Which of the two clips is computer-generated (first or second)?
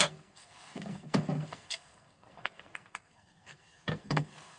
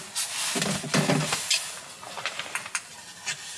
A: first